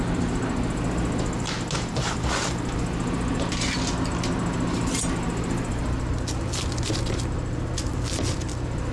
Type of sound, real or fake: real